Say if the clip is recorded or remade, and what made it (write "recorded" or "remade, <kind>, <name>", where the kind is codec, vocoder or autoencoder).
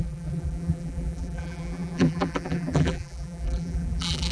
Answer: remade, vocoder, BigVGAN v2